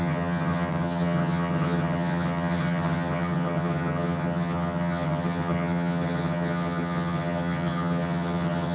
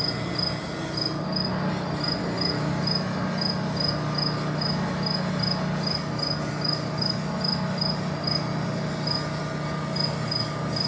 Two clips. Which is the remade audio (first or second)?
first